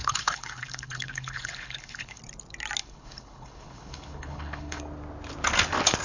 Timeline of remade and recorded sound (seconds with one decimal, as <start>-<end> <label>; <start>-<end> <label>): 0.0-2.2 remade; 2.2-2.8 recorded; 2.8-4.8 remade; 4.8-6.0 recorded